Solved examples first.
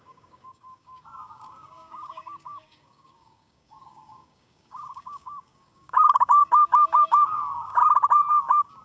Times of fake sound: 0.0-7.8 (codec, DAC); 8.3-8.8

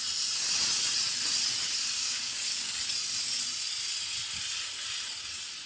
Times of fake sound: 2.0-2.7 (codec, DAC)

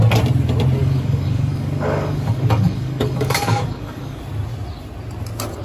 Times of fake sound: 0.8-4.2 (codec, DAC)

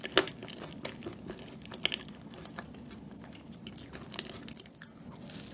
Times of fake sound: none

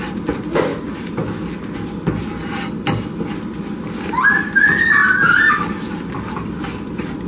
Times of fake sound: none

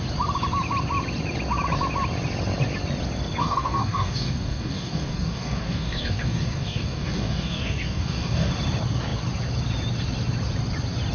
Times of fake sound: 3.4-8.5 (codec, DAC)

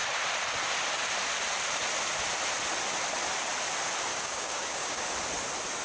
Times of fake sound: 4.1-5.0 (codec, DAC)